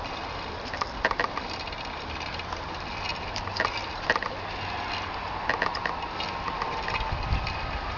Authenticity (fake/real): real